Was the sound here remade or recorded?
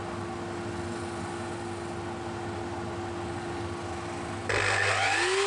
recorded